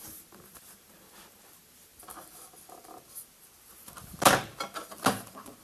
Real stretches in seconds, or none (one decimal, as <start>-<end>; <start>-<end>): 0.0-1.9